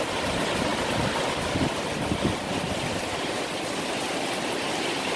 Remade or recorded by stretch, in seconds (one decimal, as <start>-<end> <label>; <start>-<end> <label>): 0.0-5.2 recorded